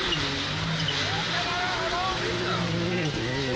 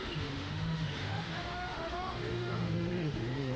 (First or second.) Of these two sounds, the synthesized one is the second